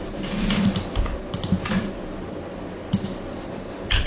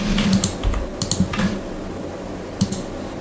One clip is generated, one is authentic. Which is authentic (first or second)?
second